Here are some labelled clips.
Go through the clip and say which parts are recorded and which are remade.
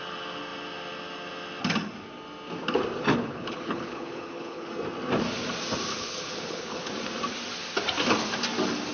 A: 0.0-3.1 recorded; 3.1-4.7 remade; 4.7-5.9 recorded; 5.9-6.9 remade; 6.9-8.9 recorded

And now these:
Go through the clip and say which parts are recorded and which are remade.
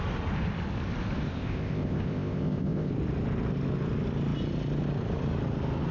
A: 0.0-1.3 recorded; 1.3-2.9 remade; 2.9-5.9 recorded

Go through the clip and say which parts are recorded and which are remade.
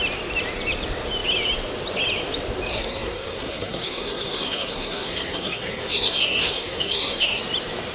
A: 0.0-2.7 recorded; 2.7-7.4 remade; 7.4-7.9 recorded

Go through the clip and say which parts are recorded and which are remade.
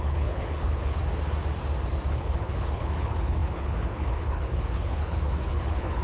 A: 0.0-1.0 remade; 1.0-2.1 recorded; 2.1-6.0 remade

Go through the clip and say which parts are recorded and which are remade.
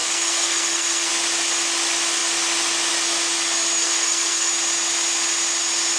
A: 0.0-1.1 remade; 1.1-3.8 recorded; 3.8-4.5 remade; 4.5-6.0 recorded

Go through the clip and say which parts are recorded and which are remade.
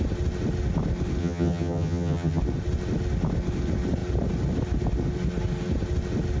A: 0.0-1.2 recorded; 1.2-2.4 remade; 2.4-6.4 recorded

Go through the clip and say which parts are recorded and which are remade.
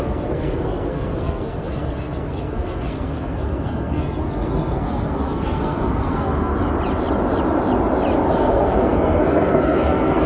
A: 0.0-6.5 remade; 6.5-8.3 recorded; 8.3-10.3 remade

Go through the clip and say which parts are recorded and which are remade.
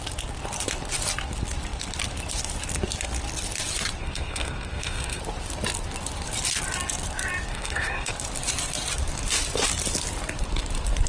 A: 0.0-4.0 recorded; 4.0-5.2 remade; 5.2-7.5 recorded; 7.5-8.1 remade; 8.1-11.1 recorded